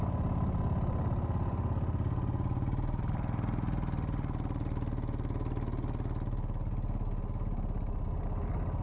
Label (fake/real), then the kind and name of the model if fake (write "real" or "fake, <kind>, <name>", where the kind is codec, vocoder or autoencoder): real